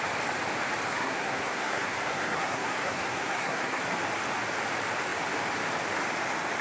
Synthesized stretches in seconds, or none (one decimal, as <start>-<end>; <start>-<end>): 0.9-3.8